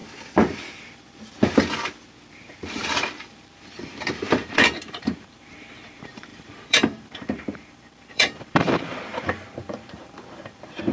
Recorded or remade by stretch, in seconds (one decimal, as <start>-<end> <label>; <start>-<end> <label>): 0.0-2.3 recorded; 2.3-10.9 remade